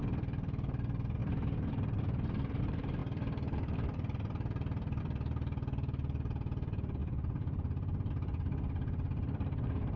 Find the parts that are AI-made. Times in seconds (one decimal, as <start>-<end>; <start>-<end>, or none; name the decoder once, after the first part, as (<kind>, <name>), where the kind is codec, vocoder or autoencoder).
0.0-10.0 (vocoder, BigVGAN v2)